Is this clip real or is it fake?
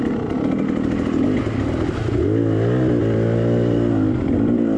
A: real